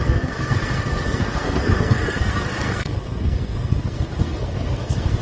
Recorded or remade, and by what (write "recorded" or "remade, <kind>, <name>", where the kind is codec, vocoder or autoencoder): remade, codec, SNAC